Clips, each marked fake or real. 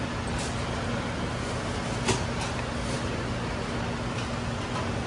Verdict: real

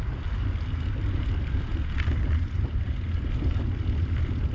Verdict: real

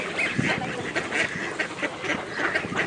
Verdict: real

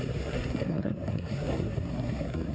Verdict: fake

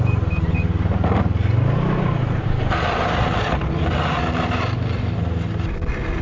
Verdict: real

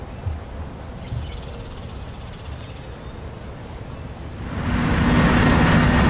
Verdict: real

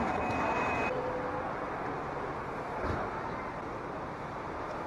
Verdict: real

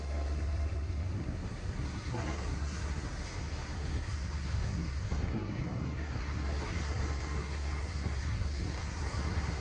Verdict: fake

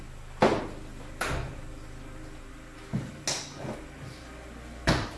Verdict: real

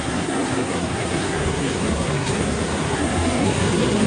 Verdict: fake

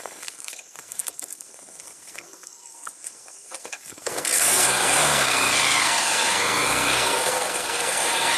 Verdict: fake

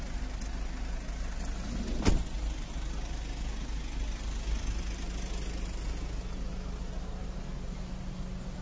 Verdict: real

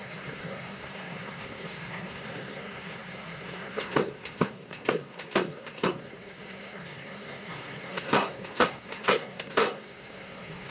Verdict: fake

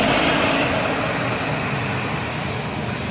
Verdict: real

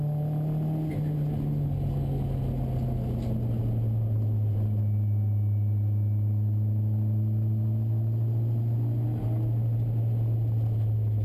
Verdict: real